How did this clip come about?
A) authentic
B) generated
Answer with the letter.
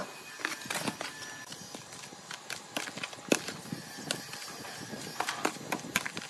A